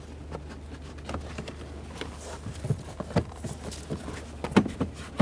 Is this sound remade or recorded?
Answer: recorded